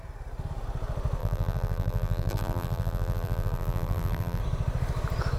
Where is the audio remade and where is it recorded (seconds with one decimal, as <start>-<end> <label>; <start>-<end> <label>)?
0.0-1.2 recorded; 1.2-4.4 remade; 4.4-5.4 recorded